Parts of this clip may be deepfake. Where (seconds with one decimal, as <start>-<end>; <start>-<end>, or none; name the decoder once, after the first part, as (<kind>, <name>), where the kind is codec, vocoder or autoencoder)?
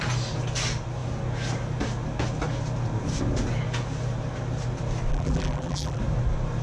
5.1-6.0 (vocoder, BigVGAN v2)